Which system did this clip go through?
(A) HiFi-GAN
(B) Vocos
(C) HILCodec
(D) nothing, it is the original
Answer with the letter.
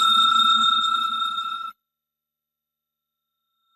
C